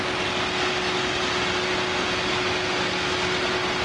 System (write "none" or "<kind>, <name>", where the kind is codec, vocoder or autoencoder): none